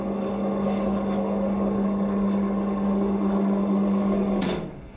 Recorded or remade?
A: remade